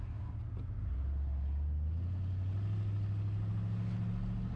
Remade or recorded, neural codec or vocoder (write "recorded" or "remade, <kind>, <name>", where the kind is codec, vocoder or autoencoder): recorded